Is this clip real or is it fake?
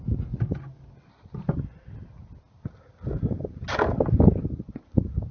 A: real